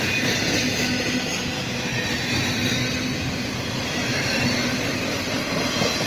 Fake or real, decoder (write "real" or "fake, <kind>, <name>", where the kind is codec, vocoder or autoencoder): real